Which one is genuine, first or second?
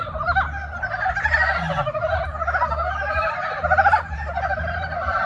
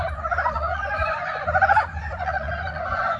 first